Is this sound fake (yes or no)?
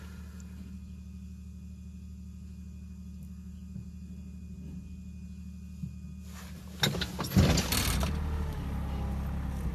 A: no